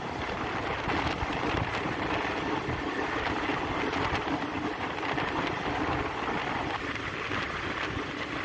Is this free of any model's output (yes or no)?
yes